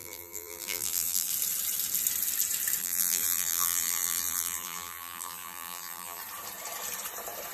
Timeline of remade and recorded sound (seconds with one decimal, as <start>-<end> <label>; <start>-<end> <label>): 0.0-1.3 remade; 1.3-2.8 recorded; 2.8-6.2 remade; 6.2-7.5 recorded